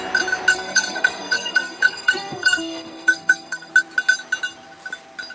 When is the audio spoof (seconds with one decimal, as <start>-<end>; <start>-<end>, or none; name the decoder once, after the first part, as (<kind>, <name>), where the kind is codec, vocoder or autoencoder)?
0.5-3.7 (codec, SNAC)

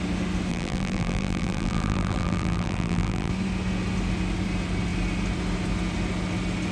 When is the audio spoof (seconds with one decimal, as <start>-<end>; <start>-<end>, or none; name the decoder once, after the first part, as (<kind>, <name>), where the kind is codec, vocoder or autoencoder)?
0.5-3.3 (vocoder, BigVGAN v2)